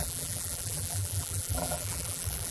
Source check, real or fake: fake